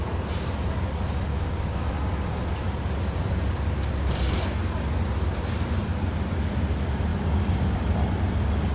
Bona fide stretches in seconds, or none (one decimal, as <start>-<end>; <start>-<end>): 0.0-1.3; 1.9-8.7